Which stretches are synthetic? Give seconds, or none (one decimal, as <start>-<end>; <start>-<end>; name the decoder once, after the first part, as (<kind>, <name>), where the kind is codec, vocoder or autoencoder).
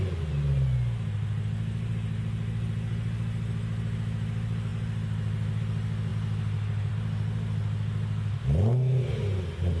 none